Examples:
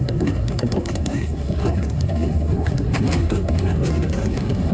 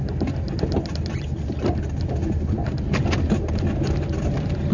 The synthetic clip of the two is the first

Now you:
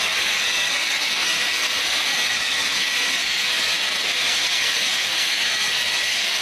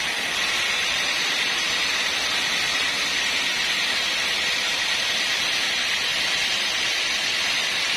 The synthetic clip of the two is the first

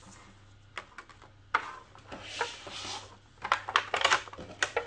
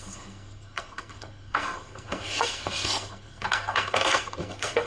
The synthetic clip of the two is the second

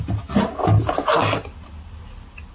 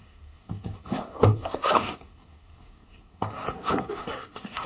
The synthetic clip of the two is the second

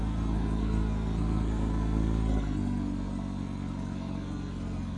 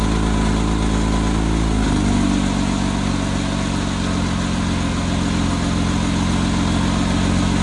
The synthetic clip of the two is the first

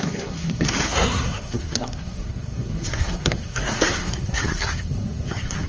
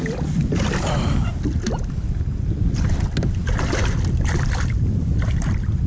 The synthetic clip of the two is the first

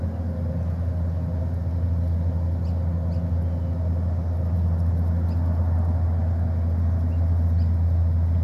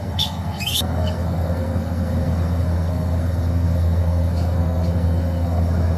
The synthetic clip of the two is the second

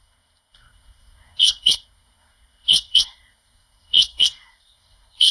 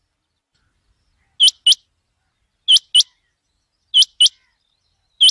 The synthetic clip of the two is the first